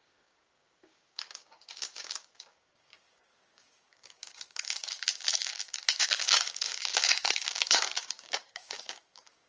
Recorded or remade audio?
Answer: remade